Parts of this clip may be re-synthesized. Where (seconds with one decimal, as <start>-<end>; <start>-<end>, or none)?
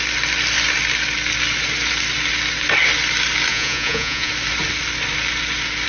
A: 3.5-4.3